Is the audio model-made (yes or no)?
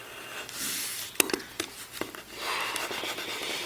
no